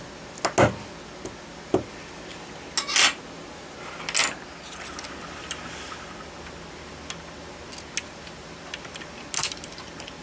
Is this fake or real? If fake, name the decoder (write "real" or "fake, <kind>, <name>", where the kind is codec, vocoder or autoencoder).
real